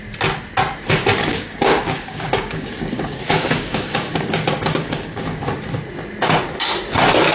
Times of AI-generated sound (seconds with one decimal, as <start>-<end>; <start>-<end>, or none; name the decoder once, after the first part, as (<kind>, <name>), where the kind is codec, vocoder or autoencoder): 1.2-5.4 (codec, DAC)